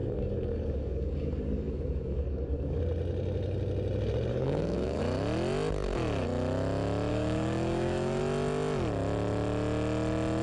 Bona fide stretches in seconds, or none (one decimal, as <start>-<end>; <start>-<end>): 2.8-4.3; 5.0-7.1; 8.2-10.4